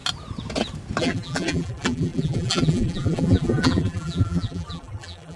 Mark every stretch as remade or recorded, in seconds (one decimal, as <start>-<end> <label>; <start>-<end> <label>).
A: 0.0-1.0 recorded; 1.0-5.4 remade